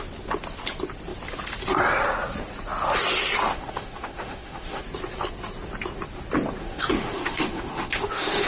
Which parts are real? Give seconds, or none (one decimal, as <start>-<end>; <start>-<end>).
0.0-3.5; 4.8-6.6